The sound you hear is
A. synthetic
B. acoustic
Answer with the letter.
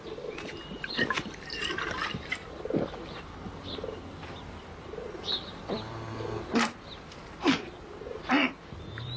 A